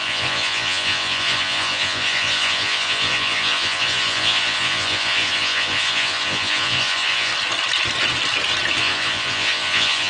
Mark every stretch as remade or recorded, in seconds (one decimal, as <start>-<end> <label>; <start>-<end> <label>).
0.0-7.3 remade; 7.3-8.8 recorded; 8.8-10.1 remade